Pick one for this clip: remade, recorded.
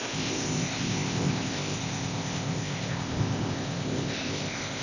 remade